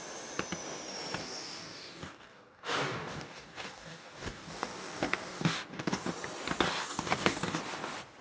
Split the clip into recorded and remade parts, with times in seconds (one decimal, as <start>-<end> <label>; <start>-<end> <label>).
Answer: 0.0-1.2 recorded; 1.2-6.1 remade; 6.1-6.8 recorded; 6.8-7.6 remade; 7.6-8.2 recorded